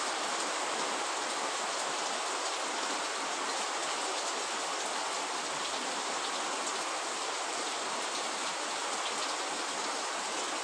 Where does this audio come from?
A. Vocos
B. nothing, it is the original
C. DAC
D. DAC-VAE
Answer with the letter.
B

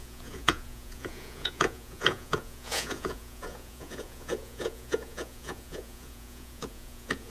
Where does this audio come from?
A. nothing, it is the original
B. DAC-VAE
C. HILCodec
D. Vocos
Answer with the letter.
D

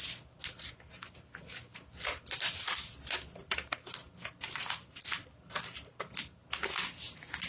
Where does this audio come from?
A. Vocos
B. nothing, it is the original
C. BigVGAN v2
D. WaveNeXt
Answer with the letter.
B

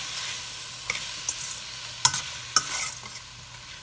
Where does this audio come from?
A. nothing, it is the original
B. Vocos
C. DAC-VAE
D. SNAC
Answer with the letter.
A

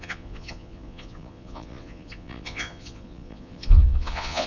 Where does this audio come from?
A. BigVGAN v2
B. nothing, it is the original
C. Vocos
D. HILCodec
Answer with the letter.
C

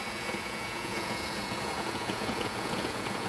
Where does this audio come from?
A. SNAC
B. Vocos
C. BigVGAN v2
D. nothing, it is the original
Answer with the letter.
B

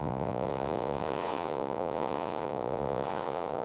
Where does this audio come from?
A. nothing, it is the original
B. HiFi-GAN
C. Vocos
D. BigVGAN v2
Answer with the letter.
C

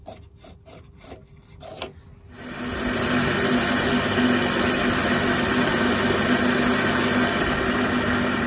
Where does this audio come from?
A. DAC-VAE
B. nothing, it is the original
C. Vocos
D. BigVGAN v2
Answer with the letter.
B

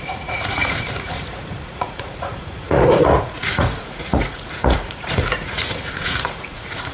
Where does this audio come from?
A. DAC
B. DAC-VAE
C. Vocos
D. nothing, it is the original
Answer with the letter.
C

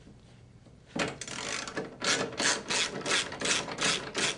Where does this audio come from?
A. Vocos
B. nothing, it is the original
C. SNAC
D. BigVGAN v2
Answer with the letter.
B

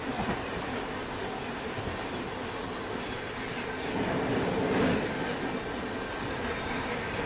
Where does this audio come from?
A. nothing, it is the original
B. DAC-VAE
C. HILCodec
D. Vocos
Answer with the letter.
A